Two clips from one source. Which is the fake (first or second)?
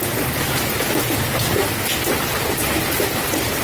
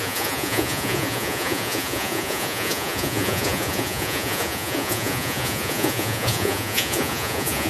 second